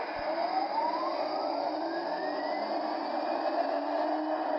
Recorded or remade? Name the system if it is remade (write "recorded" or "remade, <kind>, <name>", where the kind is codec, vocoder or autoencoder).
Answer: recorded